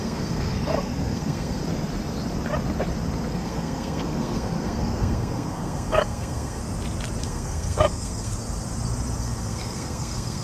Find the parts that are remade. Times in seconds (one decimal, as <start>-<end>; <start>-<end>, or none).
0.0-1.6; 3.3-6.6; 7.2-8.3; 9.2-10.4